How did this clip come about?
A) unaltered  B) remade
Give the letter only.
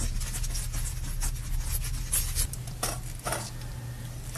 A